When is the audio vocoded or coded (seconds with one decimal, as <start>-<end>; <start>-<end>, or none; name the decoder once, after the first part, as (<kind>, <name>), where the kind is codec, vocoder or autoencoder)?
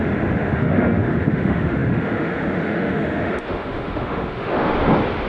0.0-4.7 (autoencoder, DAC-VAE)